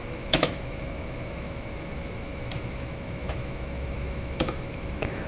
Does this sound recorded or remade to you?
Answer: remade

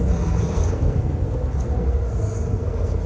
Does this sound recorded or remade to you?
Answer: remade